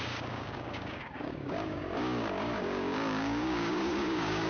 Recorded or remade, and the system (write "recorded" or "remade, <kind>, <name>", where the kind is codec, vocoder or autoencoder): remade, codec, DAC